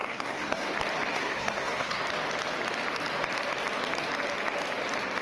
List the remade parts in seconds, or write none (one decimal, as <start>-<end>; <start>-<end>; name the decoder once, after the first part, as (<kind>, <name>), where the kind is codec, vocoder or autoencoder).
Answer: 0.0-0.7 (codec, SNAC); 1.1-2.0